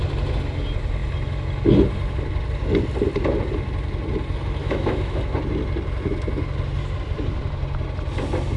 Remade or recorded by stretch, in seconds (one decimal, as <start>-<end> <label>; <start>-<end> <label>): 0.0-4.6 recorded; 4.6-5.2 remade; 5.2-8.6 recorded

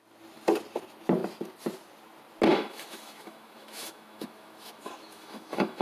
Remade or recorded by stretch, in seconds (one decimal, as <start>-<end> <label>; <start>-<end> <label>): 0.0-2.5 recorded; 2.5-5.8 remade

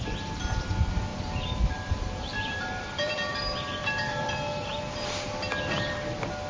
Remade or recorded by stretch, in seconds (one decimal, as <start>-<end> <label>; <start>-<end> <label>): 0.0-1.1 recorded; 1.1-4.8 remade; 4.8-6.5 recorded

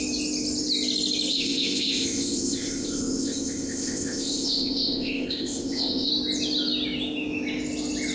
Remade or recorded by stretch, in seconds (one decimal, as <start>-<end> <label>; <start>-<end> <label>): 0.0-1.3 recorded; 1.3-6.1 remade; 6.1-8.1 recorded

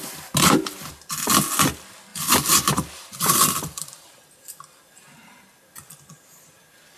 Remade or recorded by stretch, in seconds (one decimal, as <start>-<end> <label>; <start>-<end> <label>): 0.0-2.1 recorded; 2.1-4.1 remade; 4.1-7.0 recorded

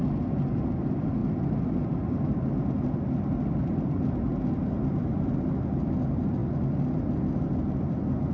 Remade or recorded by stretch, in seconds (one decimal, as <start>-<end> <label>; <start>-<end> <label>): 0.0-8.3 recorded